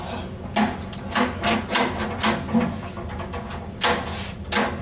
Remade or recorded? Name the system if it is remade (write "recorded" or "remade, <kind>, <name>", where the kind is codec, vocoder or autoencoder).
recorded